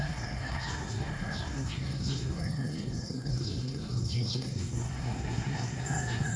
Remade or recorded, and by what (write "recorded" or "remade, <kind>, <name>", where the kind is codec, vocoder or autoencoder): remade, codec, SNAC